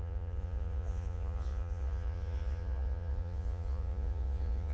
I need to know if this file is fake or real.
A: fake